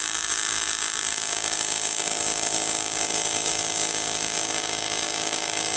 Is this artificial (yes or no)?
yes